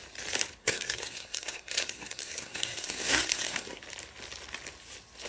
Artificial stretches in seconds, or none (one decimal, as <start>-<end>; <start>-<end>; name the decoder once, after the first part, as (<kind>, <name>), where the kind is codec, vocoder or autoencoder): 0.6-3.8 (codec, SNAC)